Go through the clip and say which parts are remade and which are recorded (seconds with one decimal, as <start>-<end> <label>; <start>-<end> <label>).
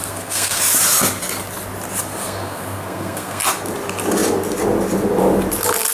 0.0-0.6 remade; 0.6-2.2 recorded; 2.2-3.4 remade; 3.4-5.9 recorded